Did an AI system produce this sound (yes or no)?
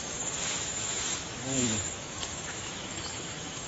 yes